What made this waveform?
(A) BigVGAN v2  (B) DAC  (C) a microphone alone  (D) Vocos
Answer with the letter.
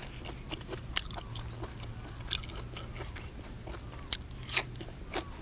C